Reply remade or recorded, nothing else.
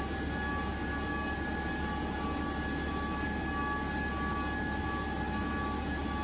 recorded